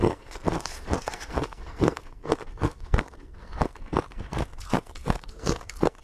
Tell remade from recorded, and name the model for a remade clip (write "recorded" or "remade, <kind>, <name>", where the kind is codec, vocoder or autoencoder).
remade, codec, SNAC